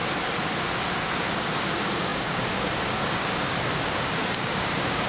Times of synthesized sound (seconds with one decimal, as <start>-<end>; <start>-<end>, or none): 1.4-5.1